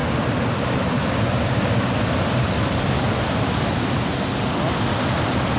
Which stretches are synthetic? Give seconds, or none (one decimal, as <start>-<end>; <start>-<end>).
none